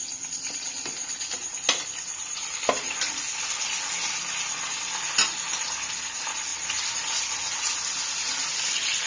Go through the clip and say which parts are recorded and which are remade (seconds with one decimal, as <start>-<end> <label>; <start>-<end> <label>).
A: 0.0-3.2 remade; 3.2-9.1 recorded